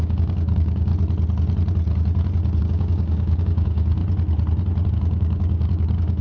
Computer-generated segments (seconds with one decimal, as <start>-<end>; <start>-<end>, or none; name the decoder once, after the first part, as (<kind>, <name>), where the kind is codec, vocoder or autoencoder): 0.0-0.9 (codec, DAC); 2.6-4.0; 4.9-6.2